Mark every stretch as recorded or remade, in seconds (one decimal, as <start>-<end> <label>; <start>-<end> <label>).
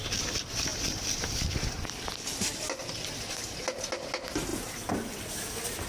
0.0-5.9 recorded